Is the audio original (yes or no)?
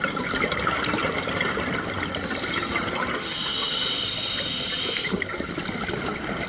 yes